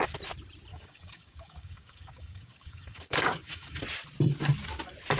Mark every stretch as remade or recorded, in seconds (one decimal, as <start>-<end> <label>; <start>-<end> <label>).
0.0-0.7 recorded; 0.7-3.8 remade; 3.8-5.2 recorded